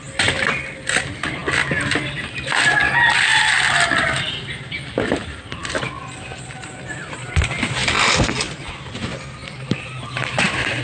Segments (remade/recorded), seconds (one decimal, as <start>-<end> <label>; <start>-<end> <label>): 0.0-1.4 remade; 1.4-2.2 recorded; 2.2-10.8 remade